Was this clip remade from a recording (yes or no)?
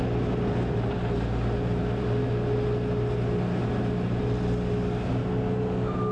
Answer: no